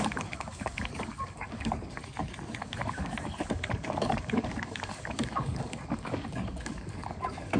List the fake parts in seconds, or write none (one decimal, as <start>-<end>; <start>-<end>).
0.0-2.0; 2.6-7.6